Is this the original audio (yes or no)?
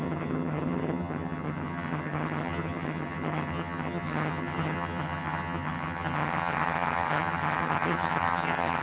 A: no